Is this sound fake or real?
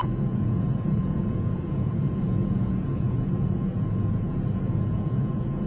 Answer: fake